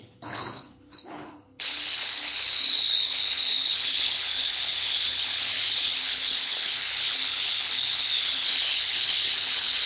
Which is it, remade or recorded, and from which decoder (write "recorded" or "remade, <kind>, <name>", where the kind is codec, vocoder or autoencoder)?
remade, codec, HILCodec